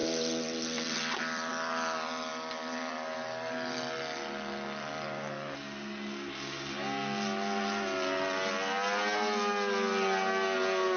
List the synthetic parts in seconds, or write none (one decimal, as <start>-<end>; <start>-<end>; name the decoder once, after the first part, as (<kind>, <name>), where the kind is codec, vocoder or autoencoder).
0.0-1.5 (vocoder, BigVGAN v2)